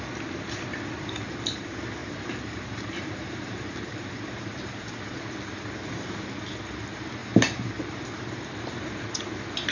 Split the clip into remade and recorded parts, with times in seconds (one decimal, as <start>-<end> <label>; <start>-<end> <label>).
0.0-2.0 recorded; 2.0-4.9 remade; 4.9-7.2 recorded; 7.2-8.0 remade; 8.0-9.7 recorded